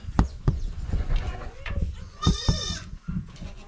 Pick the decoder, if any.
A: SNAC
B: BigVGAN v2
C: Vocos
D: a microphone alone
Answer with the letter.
C